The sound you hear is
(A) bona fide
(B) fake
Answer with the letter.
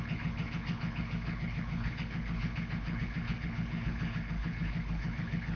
B